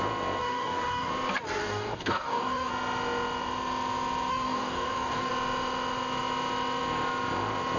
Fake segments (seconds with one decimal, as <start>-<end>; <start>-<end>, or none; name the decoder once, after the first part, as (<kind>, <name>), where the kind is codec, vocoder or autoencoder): 0.4-1.1 (codec, DAC); 1.6-2.7; 4.3-5.3